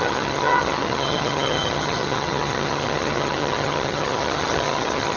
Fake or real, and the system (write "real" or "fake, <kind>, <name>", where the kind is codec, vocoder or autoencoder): fake, vocoder, HiFi-GAN